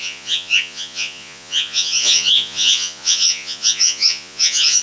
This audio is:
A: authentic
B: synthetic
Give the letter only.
B